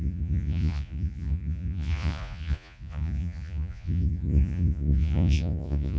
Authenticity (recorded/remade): remade